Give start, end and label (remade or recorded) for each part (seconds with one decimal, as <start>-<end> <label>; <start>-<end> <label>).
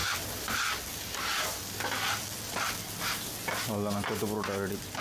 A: 0.0-5.0 recorded